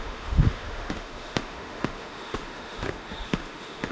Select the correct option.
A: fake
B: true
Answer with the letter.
A